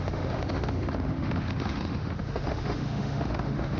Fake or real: fake